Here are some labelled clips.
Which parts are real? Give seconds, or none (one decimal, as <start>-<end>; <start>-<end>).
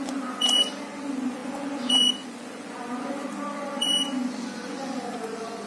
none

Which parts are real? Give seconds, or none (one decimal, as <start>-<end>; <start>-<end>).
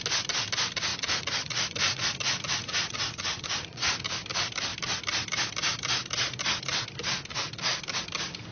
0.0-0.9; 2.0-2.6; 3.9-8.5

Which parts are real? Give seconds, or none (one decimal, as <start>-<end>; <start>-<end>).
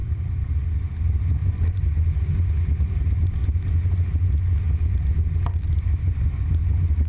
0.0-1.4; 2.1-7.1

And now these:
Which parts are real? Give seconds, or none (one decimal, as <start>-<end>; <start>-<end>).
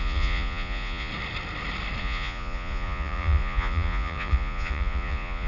1.1-2.0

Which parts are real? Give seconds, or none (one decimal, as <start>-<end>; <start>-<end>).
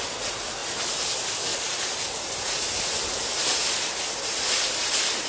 0.0-5.3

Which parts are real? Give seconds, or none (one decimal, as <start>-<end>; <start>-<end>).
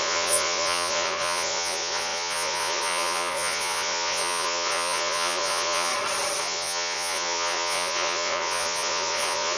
5.9-6.4